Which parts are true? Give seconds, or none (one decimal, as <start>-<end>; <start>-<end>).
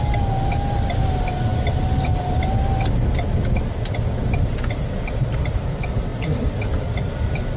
0.0-7.6